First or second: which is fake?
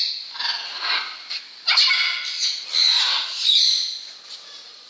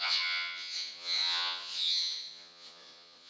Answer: second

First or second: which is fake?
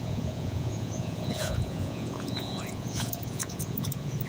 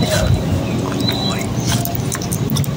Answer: first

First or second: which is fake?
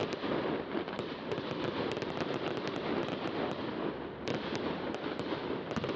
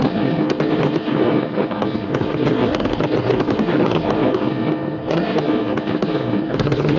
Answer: second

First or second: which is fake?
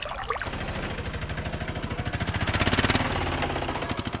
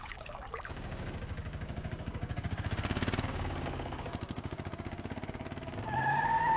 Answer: second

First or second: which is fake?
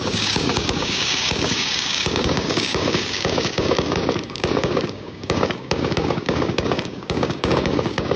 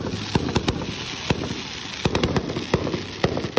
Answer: first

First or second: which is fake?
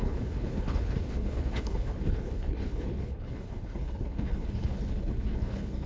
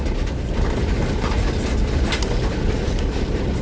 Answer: first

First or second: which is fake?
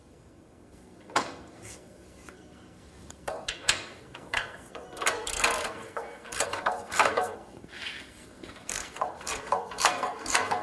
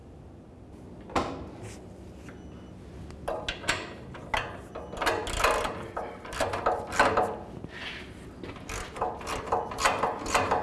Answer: first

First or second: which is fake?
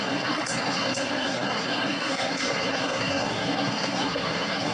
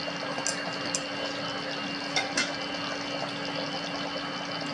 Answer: first